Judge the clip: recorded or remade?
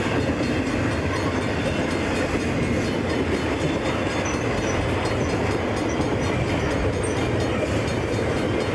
recorded